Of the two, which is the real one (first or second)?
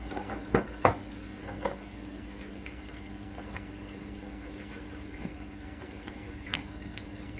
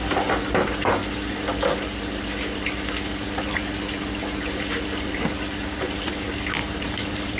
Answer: second